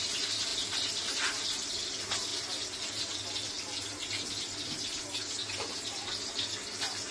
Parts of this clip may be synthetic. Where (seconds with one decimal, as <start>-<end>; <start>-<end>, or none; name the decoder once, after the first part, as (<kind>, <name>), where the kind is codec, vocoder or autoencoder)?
none